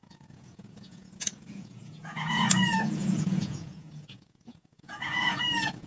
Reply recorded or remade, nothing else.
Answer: remade